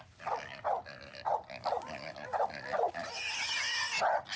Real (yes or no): yes